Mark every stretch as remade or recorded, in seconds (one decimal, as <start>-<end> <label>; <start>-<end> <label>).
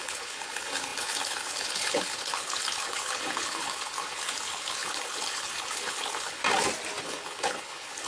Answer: 0.0-6.4 remade; 6.4-7.0 recorded; 7.0-8.1 remade